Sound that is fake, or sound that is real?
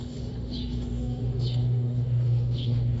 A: fake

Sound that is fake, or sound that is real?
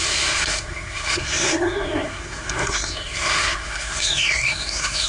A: fake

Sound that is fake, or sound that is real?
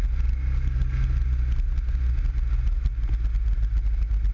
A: real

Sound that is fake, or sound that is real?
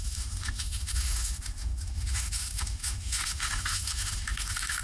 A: fake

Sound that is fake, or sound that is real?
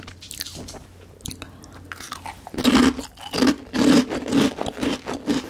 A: real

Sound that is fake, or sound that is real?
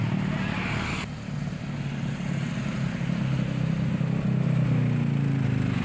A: real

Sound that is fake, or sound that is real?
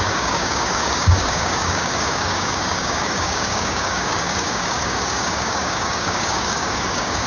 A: fake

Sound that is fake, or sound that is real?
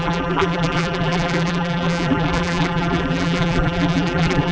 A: fake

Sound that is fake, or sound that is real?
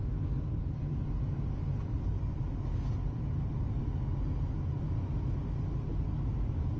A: real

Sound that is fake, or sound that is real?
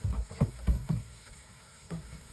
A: fake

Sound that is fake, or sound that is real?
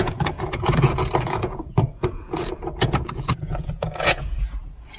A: fake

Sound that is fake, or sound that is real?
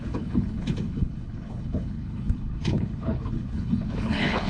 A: fake